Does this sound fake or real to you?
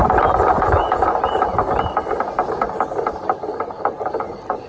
real